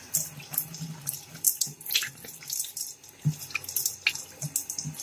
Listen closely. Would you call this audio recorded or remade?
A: recorded